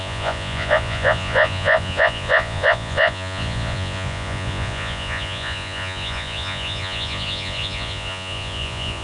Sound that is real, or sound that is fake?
fake